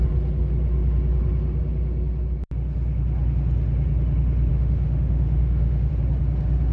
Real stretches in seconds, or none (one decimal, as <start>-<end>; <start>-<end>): 0.0-4.5; 5.9-6.7